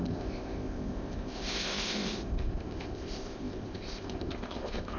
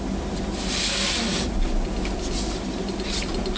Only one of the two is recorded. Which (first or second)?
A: second